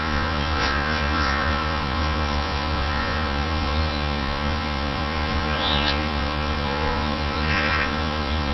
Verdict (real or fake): fake